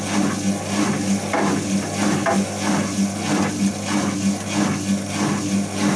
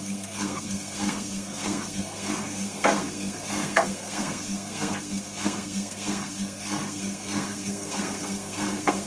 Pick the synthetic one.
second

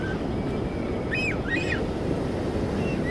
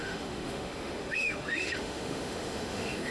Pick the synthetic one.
second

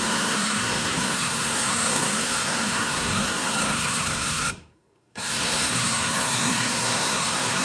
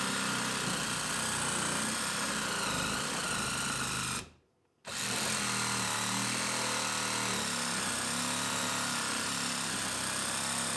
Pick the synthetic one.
first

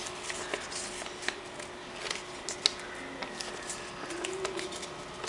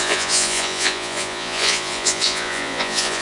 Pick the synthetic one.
second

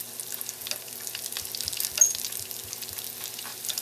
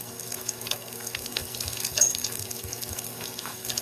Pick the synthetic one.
second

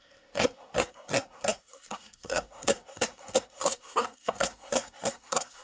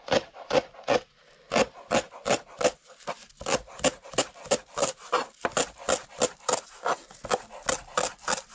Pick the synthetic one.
first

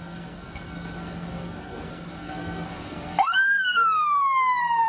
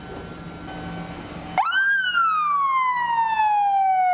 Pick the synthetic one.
first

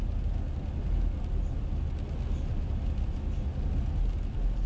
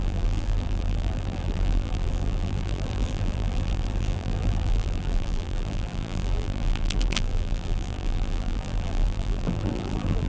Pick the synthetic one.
second